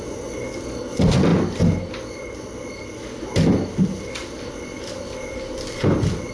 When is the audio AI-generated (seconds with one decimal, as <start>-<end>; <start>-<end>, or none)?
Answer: none